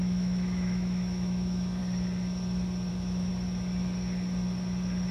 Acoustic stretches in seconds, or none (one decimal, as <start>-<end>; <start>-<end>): 1.8-2.9; 3.3-5.1